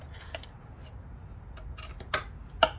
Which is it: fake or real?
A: real